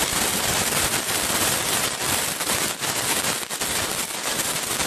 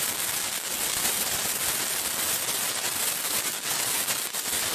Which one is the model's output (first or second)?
first